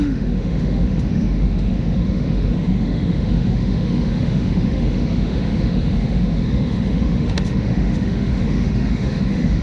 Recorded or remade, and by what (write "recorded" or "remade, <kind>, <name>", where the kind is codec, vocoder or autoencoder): remade, autoencoder, DAC-VAE